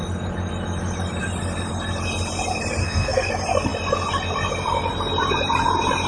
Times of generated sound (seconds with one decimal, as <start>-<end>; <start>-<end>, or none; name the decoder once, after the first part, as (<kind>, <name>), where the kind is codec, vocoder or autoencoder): 2.8-3.3 (codec, SNAC)